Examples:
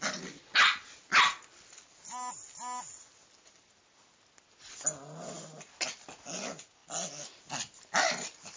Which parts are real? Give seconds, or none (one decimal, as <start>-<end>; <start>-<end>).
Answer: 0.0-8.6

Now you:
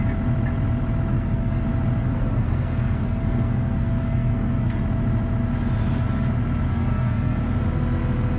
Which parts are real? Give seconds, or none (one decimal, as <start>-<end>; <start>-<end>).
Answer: 0.0-1.1; 1.6-2.0; 4.8-6.7; 7.4-8.4

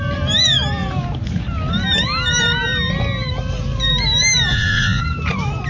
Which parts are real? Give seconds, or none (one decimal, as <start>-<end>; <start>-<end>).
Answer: 0.0-4.5; 5.0-5.7

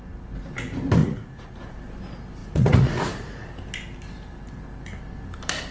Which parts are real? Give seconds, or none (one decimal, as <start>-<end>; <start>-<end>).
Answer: 0.0-1.0; 1.6-2.4; 3.5-5.7